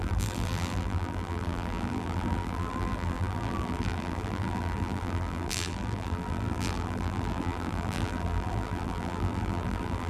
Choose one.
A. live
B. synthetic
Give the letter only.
B